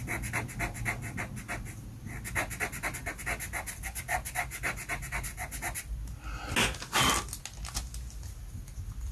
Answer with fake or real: real